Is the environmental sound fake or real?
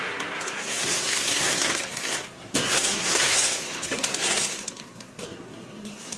fake